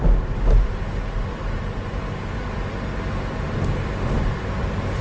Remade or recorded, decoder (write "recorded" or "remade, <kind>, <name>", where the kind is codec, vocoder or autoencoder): recorded